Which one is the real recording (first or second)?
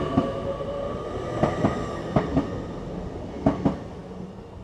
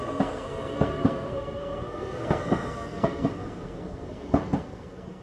first